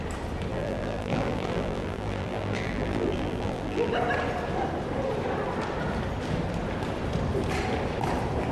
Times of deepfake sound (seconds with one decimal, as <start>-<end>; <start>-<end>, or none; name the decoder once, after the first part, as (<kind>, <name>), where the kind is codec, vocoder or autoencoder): 0.5-3.9 (vocoder, BigVGAN v2)